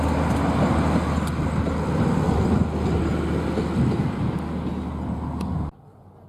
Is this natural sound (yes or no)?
yes